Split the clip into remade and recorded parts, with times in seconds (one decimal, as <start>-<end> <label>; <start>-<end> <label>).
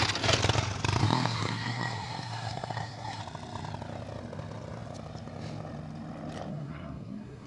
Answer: 0.0-1.0 recorded; 1.0-3.2 remade; 3.2-6.5 recorded; 6.5-7.5 remade